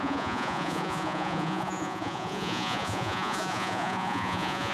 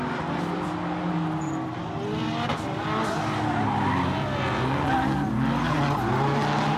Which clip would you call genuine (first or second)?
second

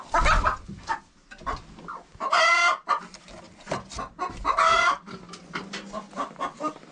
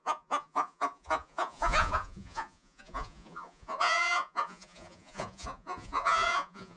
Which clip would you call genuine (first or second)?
first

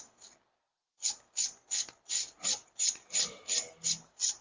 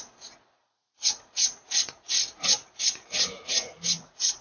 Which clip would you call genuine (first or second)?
first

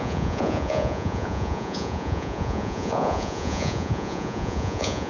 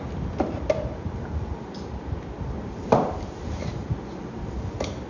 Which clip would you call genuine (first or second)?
second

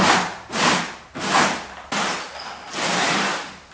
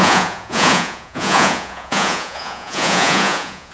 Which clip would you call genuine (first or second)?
first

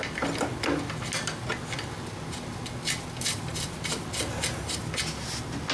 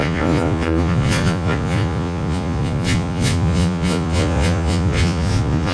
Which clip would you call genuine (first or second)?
first